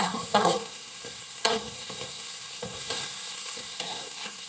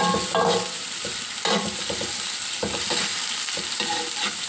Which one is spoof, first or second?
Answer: first